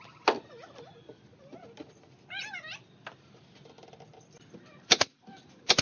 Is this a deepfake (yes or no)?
no